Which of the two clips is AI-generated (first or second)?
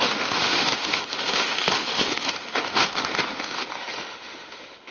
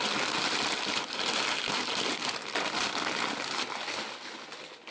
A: first